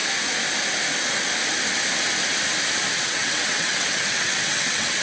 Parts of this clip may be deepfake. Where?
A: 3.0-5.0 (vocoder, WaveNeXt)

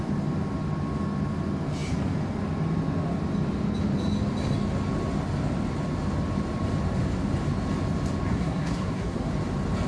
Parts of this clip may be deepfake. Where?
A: 8.3-9.3 (codec, SNAC)

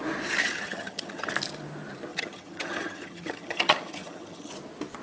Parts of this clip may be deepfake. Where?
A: 0.4-1.3 (vocoder, HiFi-GAN); 2.1-4.5

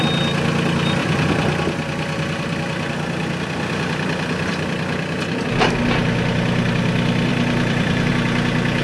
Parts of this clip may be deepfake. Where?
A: 1.0-5.4 (vocoder, BigVGAN v2); 7.3-8.1

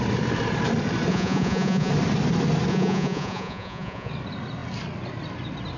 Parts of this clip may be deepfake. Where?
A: 1.1-1.9 (vocoder, Vocos); 2.7-4.1